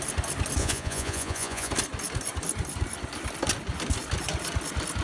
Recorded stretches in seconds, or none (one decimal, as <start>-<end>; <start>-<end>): 0.0-0.6; 1.7-5.0